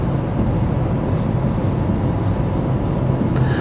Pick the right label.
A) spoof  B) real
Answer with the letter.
B